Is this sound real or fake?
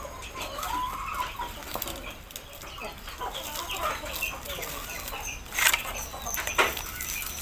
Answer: real